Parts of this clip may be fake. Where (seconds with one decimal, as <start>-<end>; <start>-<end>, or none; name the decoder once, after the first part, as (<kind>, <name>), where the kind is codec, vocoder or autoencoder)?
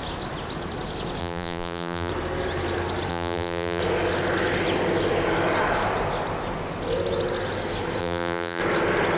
1.2-2.1 (vocoder, BigVGAN v2); 3.1-3.8; 8.0-8.6